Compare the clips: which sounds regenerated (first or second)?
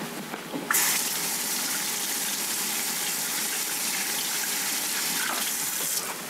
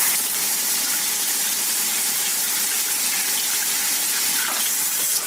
second